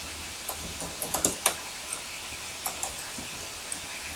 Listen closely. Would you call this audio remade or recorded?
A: recorded